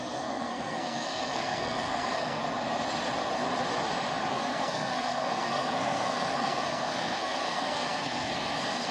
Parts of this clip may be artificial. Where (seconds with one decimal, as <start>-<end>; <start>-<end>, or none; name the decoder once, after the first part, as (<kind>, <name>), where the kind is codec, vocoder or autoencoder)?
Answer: 0.0-2.4 (codec, SNAC); 4.3-8.9